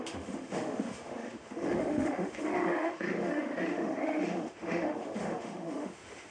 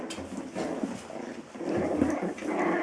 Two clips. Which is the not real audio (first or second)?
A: first